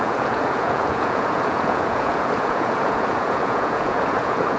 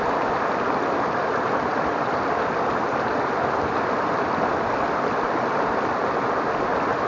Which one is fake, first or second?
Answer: first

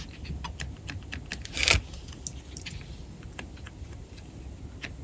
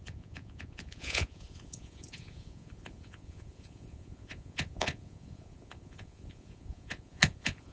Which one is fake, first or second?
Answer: second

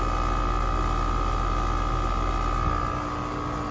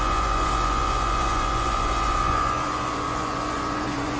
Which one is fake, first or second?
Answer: second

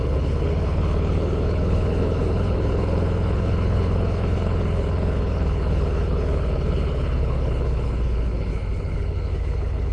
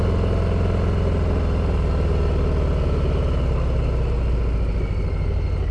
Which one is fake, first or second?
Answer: first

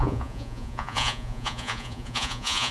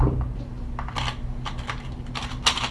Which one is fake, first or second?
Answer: first